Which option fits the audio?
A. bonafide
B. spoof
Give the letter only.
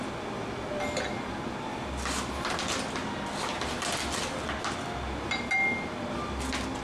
A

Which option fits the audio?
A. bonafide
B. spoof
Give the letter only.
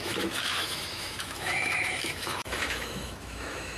B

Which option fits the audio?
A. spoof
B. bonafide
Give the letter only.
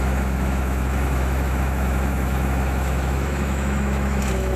A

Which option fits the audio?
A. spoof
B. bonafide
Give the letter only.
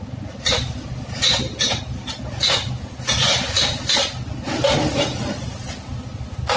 B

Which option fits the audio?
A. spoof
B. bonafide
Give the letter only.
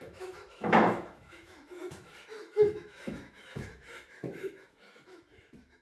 A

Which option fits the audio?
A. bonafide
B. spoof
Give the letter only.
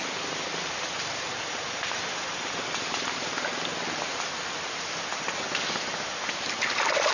A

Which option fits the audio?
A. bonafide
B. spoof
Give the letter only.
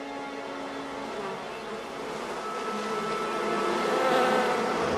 A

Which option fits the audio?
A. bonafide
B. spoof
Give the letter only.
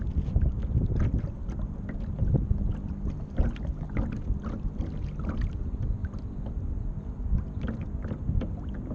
A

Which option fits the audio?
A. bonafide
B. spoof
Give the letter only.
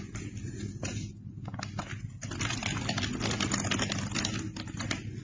A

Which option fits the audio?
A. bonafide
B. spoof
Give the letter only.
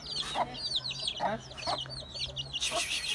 A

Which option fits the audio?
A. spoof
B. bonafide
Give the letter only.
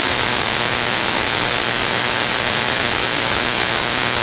A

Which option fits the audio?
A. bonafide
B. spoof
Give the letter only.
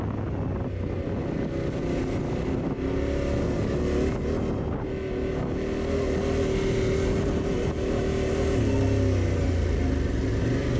A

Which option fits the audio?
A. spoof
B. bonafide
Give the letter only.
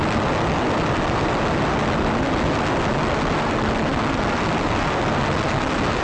B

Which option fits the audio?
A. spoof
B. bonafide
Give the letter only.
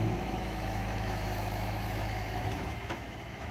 A